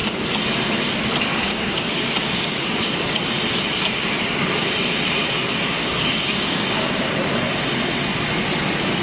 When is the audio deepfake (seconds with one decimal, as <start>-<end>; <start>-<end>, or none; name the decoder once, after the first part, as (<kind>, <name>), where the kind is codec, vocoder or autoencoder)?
1.3-3.2 (codec, DAC); 5.8-7.0